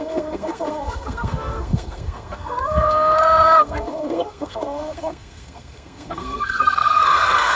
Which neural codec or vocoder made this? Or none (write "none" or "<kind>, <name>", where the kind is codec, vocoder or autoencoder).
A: codec, SNAC